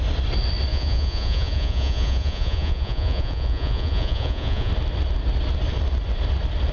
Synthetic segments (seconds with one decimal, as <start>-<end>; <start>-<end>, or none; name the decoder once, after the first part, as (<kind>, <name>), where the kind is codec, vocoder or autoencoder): 0.7-4.7 (vocoder, Vocos)